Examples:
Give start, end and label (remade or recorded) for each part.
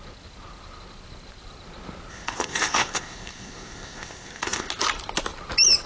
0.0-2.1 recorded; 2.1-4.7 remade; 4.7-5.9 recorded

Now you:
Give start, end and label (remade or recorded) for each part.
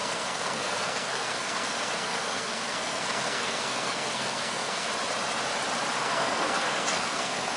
0.0-4.9 remade; 4.9-6.0 recorded; 6.0-7.6 remade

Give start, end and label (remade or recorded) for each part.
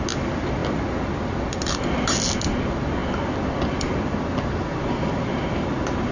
0.0-6.1 recorded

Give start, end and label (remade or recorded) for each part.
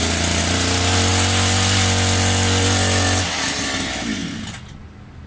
0.0-5.3 recorded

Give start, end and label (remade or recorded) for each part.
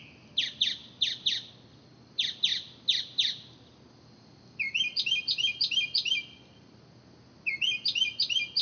0.0-0.8 recorded; 0.8-1.5 remade; 1.5-2.5 recorded; 2.5-6.5 remade; 6.5-8.6 recorded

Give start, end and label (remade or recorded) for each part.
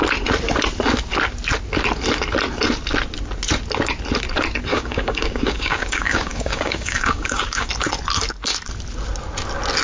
0.0-4.7 recorded; 4.7-7.7 remade; 7.7-9.8 recorded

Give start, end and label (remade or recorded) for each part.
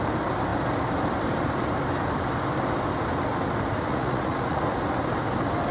0.0-3.7 recorded; 3.7-4.6 remade; 4.6-5.7 recorded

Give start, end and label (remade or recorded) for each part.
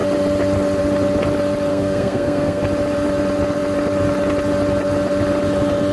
0.0-1.7 recorded; 1.7-2.6 remade; 2.6-5.9 recorded